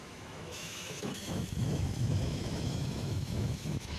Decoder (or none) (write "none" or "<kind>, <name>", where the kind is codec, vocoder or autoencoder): autoencoder, DAC-VAE